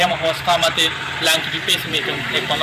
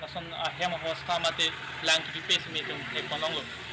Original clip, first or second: second